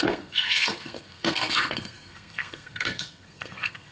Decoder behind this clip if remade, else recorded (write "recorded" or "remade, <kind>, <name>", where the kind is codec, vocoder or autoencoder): remade, codec, SNAC